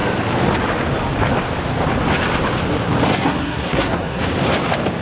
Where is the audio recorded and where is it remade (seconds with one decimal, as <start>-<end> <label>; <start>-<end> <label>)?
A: 0.0-3.1 recorded; 3.1-4.2 remade; 4.2-5.0 recorded